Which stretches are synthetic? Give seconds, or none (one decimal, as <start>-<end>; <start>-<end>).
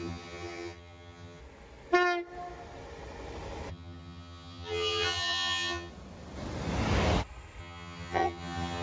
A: 0.0-1.4; 3.7-5.9; 7.6-8.8